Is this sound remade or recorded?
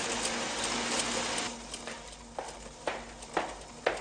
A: recorded